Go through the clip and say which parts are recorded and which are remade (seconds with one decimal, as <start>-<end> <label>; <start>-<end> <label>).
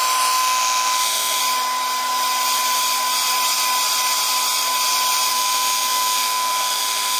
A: 0.0-1.4 remade; 1.4-5.3 recorded; 5.3-7.2 remade